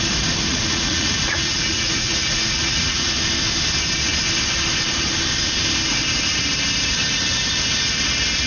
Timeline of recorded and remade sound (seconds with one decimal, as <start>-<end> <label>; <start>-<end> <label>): 0.0-0.5 recorded; 0.5-3.1 remade; 3.1-8.5 recorded